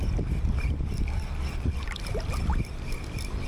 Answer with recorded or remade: recorded